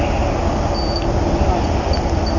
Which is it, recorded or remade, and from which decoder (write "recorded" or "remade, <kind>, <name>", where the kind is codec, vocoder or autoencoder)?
recorded